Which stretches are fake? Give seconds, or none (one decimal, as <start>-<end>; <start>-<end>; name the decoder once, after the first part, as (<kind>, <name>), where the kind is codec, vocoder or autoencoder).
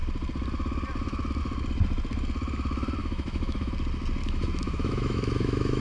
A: 3.0-3.7 (autoencoder, DAC-VAE); 4.2-5.8